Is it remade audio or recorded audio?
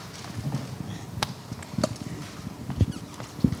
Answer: recorded